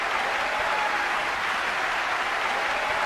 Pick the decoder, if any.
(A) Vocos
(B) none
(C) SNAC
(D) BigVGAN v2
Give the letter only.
D